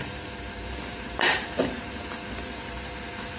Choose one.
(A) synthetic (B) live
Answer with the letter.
A